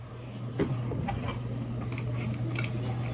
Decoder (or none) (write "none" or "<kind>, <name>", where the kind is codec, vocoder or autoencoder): none